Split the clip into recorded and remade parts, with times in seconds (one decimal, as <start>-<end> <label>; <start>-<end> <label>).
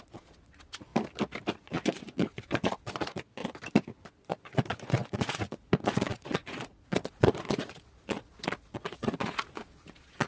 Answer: 0.0-0.9 remade; 0.9-1.6 recorded; 1.6-3.4 remade; 3.4-4.1 recorded; 4.1-10.3 remade